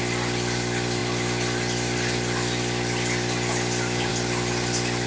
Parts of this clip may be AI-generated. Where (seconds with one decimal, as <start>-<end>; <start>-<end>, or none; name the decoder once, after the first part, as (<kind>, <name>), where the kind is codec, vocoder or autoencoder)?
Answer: none